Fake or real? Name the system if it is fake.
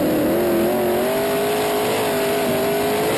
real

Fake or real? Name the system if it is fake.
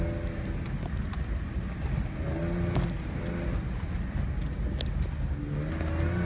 real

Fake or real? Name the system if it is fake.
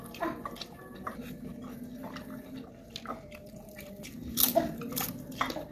real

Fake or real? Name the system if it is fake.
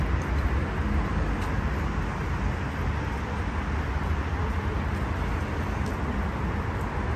real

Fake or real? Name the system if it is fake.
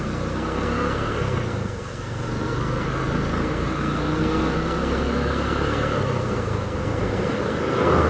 fake, codec, SNAC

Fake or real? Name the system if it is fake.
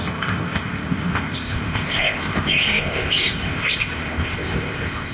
fake, codec, ZipCodec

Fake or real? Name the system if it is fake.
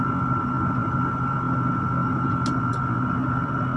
real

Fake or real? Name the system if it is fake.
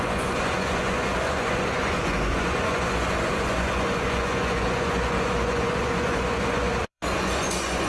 fake, vocoder, Vocos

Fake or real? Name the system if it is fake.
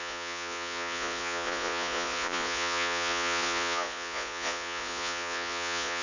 fake, vocoder, Vocos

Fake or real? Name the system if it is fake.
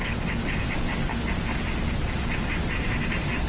real